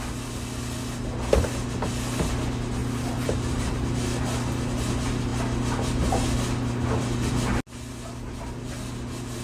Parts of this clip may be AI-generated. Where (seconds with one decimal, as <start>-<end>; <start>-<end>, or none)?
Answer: 2.8-3.7